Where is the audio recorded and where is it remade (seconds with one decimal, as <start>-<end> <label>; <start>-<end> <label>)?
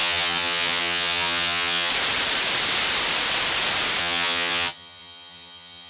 0.0-1.9 remade; 1.9-4.0 recorded; 4.0-5.9 remade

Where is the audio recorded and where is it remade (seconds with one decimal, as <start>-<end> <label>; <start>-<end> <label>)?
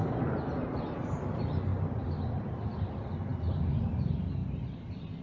0.0-5.2 recorded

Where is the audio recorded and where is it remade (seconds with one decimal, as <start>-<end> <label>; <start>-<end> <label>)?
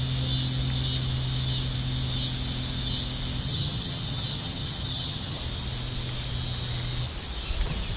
0.0-3.4 recorded; 3.4-5.4 remade; 5.4-8.0 recorded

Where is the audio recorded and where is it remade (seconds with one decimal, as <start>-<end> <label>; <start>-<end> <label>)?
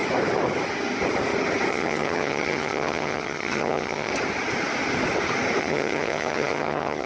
0.0-1.7 recorded; 1.7-4.1 remade; 4.1-5.6 recorded; 5.6-7.1 remade